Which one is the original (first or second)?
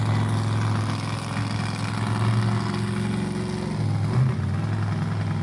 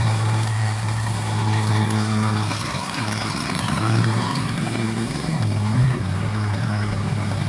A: first